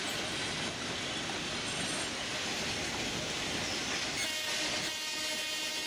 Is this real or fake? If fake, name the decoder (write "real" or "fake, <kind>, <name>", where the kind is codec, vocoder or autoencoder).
real